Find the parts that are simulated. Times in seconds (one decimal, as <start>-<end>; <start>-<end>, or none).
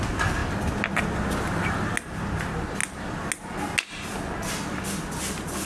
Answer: none